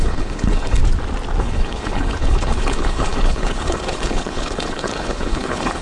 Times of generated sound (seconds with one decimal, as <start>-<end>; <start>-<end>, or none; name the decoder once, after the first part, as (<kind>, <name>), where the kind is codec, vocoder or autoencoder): 0.0-0.8 (codec, HILCodec); 1.4-5.8